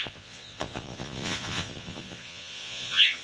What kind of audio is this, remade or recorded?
remade